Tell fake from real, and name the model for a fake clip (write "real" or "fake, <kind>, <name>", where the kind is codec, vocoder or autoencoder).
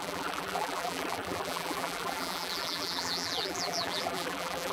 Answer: fake, vocoder, BigVGAN v2